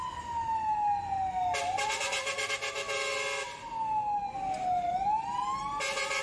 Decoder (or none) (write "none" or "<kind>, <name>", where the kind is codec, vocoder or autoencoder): none